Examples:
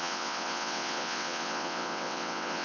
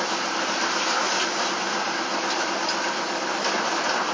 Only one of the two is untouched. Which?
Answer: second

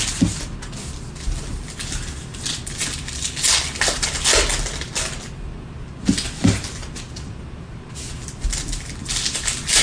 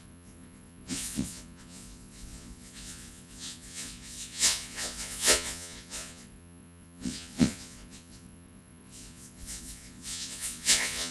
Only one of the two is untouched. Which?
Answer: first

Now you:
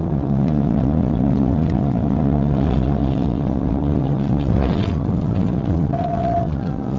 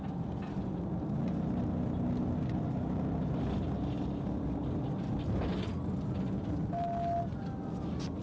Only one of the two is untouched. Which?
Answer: second